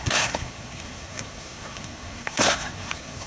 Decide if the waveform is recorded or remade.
remade